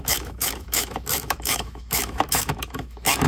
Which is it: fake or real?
fake